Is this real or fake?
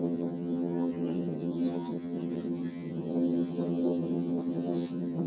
fake